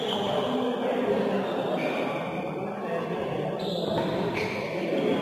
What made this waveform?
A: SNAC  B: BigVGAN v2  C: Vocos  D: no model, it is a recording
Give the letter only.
D